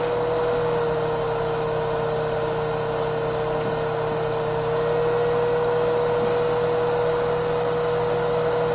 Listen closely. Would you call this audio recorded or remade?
recorded